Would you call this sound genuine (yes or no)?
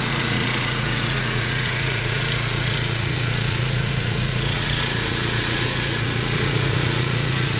no